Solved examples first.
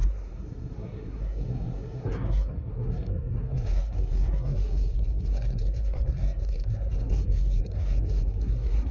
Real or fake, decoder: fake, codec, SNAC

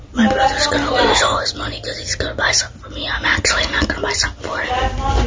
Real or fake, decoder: real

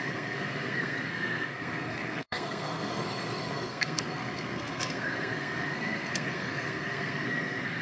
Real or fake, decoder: fake, codec, SNAC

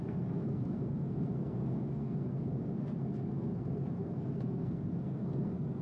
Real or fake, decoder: fake, codec, SNAC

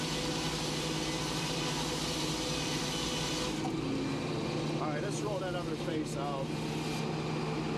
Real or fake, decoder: real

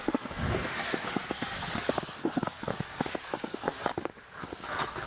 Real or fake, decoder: fake, codec, SNAC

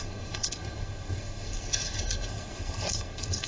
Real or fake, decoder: fake, codec, SNAC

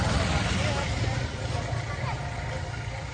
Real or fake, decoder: real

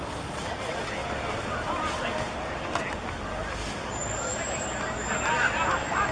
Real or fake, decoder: real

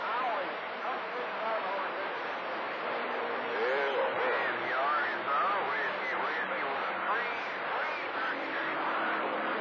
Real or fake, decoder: real